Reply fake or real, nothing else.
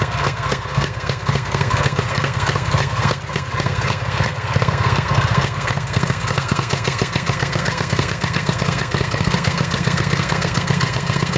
fake